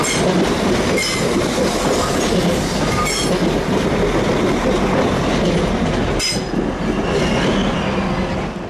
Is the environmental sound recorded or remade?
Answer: recorded